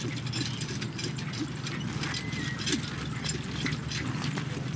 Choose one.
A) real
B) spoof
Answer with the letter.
A